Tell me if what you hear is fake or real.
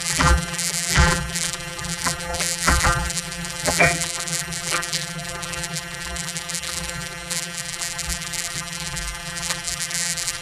fake